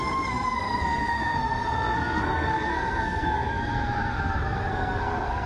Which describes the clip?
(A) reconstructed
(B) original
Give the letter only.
A